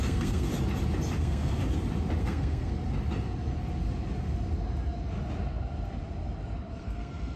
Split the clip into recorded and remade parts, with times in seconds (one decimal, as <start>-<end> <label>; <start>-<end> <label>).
0.0-0.5 remade; 0.5-1.2 recorded; 1.2-1.6 remade; 1.6-2.2 recorded; 2.2-2.7 remade; 2.7-6.8 recorded; 6.8-7.4 remade